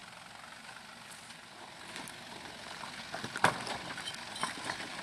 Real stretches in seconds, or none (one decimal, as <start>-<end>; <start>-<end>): 0.0-5.0